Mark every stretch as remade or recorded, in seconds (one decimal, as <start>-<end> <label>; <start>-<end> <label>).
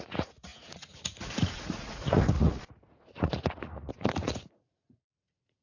0.0-5.6 remade